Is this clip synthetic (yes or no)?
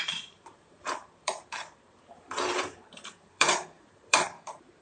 yes